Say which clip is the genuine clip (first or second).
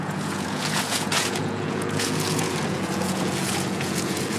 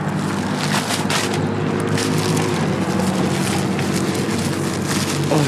second